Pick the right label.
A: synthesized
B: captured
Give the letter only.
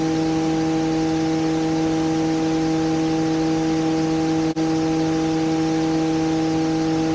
B